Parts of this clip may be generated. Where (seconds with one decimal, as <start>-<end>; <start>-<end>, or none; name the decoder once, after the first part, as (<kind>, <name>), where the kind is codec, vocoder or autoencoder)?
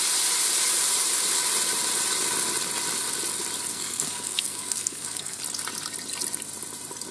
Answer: 3.7-5.4 (codec, SNAC)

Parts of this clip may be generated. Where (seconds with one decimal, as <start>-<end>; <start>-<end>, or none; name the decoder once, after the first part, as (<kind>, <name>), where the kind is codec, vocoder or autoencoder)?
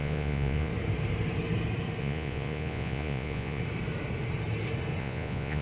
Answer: 0.0-0.7 (vocoder, Vocos); 2.0-3.6; 5.0-5.6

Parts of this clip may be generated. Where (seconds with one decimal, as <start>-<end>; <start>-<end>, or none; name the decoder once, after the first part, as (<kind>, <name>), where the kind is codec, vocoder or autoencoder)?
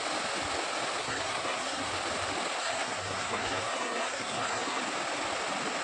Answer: 1.0-1.9 (codec, SNAC); 2.6-4.8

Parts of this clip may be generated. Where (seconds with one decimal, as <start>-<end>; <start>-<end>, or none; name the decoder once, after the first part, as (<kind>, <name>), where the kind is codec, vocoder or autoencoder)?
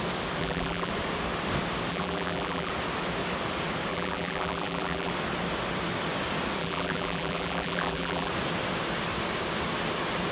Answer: 0.4-0.9 (vocoder, BigVGAN v2); 1.9-2.7; 3.9-5.1; 6.6-8.3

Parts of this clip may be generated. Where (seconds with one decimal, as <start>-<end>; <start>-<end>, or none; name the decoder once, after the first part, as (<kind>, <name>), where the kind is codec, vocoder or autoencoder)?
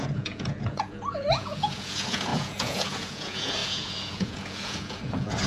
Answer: 0.0-5.5 (vocoder, Vocos)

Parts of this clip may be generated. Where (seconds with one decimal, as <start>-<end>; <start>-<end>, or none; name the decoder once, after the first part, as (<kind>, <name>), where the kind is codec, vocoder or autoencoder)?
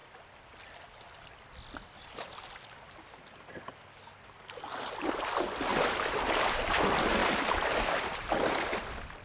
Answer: 5.7-6.7 (vocoder, BigVGAN v2); 7.2-8.3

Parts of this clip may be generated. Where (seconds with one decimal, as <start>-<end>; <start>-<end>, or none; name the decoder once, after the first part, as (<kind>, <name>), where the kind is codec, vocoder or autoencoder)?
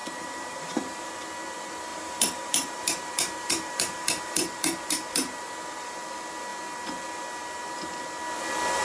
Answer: 0.0-1.1 (vocoder, BigVGAN v2); 1.9-5.5